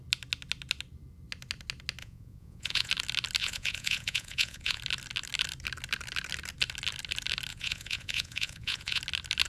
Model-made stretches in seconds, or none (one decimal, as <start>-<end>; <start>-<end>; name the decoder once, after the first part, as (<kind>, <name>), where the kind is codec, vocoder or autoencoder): 2.0-2.9 (vocoder, Vocos); 3.4-4.8; 7.5-9.0